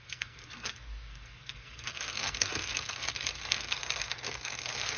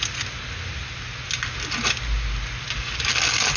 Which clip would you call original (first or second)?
second